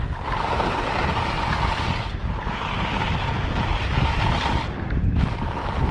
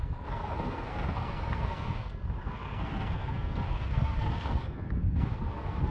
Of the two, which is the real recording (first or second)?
first